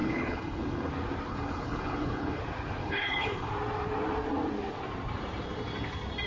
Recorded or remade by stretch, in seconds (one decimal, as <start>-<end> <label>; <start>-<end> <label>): 0.0-0.9 remade; 0.9-1.3 recorded; 1.3-2.4 remade; 2.4-2.8 recorded; 2.8-3.5 remade; 3.5-6.3 recorded